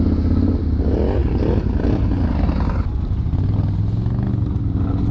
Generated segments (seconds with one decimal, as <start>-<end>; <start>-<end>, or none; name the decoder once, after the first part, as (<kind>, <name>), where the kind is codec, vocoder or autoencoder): none